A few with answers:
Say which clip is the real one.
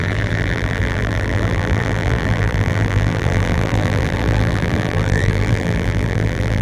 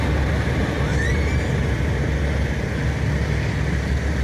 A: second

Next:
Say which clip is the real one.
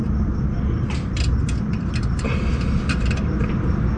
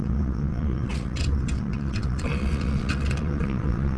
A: first